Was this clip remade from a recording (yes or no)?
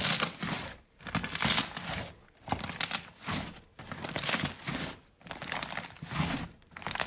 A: no